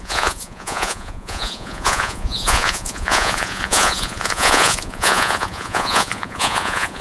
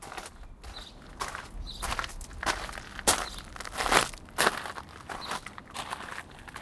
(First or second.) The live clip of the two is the second